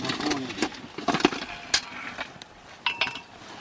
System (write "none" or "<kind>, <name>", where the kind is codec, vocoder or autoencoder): none